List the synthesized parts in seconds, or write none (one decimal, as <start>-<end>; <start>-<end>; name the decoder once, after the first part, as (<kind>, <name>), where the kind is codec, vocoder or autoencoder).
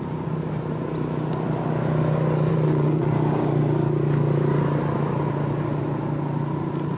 2.5-3.1 (vocoder, WaveNeXt)